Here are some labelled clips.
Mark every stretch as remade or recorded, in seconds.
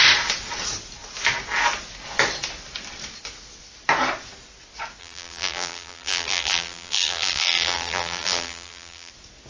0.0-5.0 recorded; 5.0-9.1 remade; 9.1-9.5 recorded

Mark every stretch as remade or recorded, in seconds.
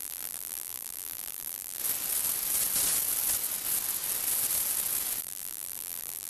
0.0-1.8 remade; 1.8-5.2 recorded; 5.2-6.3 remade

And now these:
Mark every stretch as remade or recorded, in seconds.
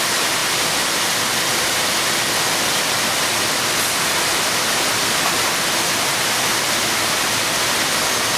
0.0-8.4 recorded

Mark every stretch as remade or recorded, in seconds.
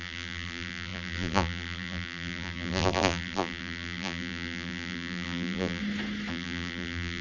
0.0-5.8 remade; 5.8-6.3 recorded; 6.3-7.2 remade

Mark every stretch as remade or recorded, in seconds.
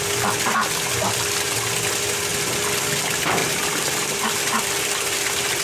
0.0-3.4 recorded; 3.4-4.2 remade; 4.2-5.6 recorded